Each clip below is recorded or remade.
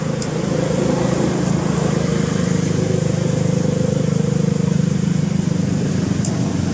recorded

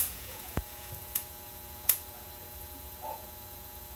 remade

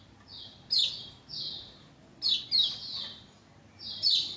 recorded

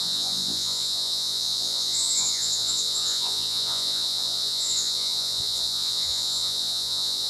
remade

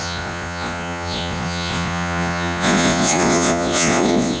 remade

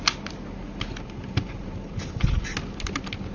recorded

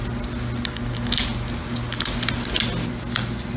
recorded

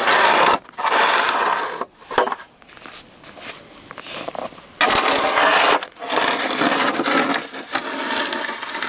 recorded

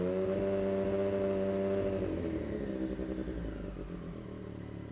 recorded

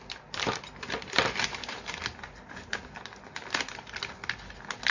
recorded